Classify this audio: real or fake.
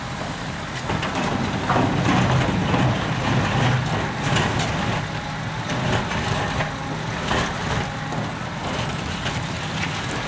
real